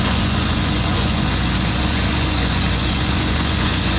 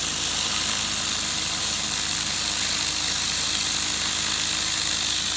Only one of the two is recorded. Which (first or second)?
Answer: second